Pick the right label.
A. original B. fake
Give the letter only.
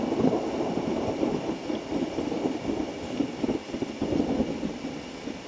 A